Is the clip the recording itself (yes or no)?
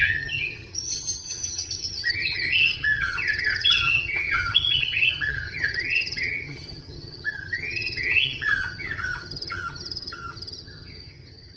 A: no